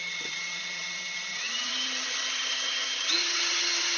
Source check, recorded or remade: remade